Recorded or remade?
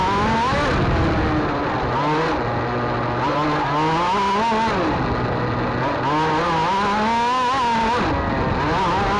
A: recorded